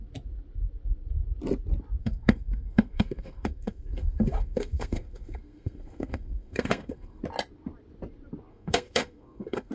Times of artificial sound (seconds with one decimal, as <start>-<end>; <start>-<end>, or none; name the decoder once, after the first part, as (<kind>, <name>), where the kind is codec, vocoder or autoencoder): 2.0-7.2 (codec, SNAC); 8.5-9.7